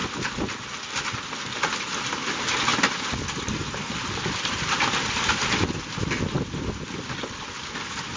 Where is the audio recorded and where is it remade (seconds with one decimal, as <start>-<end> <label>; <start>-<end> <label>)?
0.0-8.2 recorded